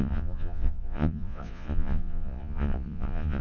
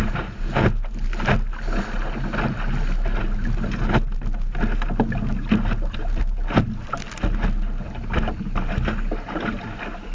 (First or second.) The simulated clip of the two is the first